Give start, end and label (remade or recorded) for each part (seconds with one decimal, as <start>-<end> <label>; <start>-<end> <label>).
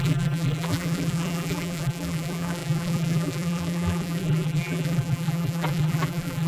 0.0-6.5 remade